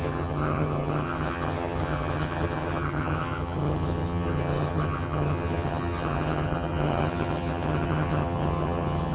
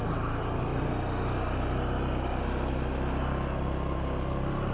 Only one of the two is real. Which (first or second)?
second